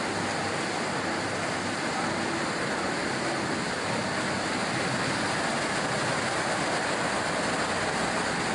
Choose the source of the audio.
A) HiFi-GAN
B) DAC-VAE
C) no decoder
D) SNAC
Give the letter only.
C